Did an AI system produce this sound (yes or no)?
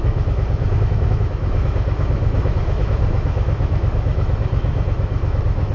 yes